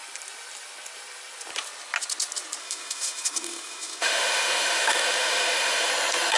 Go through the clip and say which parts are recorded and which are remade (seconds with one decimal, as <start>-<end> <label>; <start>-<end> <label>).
0.0-2.6 recorded; 2.6-5.9 remade; 5.9-6.4 recorded